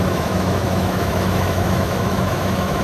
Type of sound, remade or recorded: remade